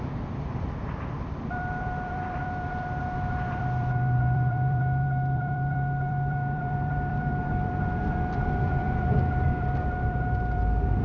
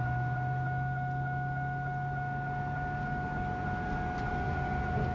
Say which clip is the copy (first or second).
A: first